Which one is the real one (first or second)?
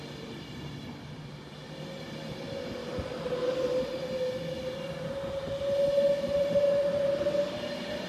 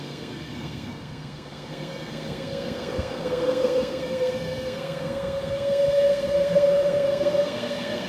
first